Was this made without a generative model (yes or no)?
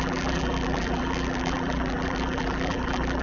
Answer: no